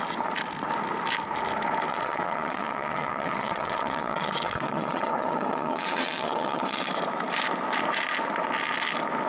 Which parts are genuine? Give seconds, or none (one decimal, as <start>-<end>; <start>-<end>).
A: 0.0-1.9; 6.9-9.3